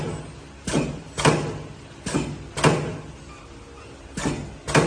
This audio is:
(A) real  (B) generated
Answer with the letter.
A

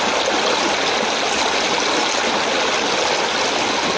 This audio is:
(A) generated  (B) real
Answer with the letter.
B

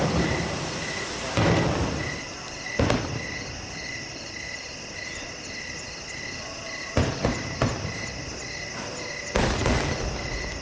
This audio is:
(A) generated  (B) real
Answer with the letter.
B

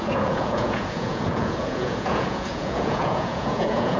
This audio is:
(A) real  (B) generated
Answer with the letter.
B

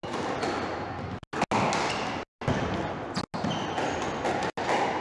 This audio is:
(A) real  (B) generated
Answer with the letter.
A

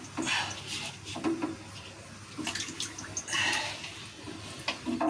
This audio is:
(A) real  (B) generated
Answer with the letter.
A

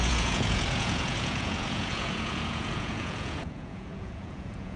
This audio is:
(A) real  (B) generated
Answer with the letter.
B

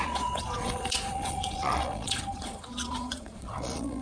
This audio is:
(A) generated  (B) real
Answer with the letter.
A